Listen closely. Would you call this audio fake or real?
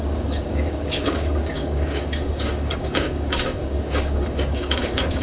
fake